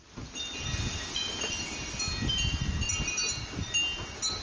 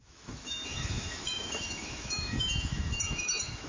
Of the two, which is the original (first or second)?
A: first